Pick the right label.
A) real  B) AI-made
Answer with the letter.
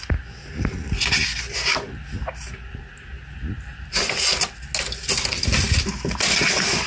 A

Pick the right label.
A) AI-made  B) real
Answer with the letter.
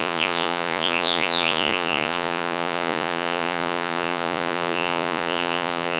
A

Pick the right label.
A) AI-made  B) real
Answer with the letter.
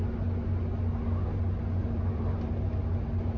B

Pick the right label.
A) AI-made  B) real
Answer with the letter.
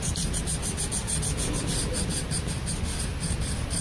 B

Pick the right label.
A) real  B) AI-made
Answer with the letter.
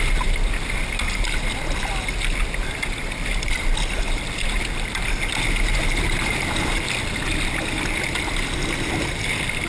A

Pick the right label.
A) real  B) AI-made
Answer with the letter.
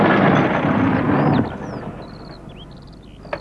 A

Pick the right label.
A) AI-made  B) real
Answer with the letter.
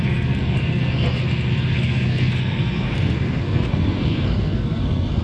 A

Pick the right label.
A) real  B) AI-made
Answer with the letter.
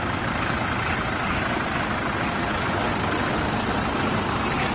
A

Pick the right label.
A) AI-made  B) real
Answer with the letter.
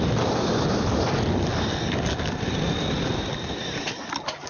B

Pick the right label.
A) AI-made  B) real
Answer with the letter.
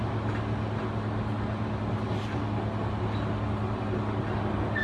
B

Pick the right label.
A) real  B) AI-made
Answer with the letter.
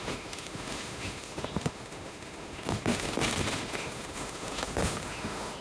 B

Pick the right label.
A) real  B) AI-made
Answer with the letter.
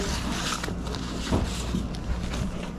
A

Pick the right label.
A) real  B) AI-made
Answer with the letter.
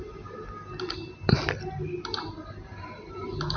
B